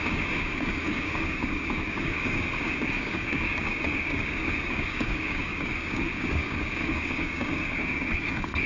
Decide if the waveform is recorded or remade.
remade